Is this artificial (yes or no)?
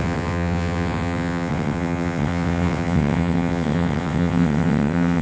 yes